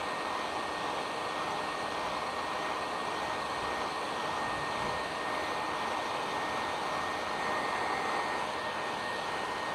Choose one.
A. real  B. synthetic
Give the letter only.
A